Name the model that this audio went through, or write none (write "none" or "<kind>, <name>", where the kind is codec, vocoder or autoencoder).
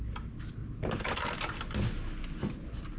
none